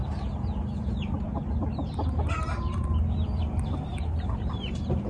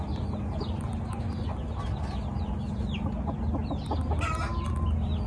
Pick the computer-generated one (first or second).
first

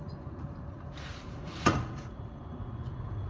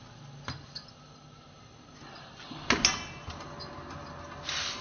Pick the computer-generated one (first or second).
first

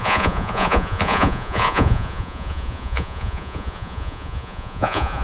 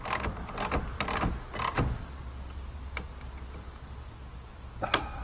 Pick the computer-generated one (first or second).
first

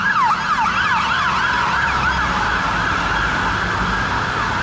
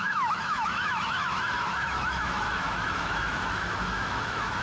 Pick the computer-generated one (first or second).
second